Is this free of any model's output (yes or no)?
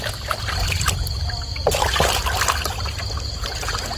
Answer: yes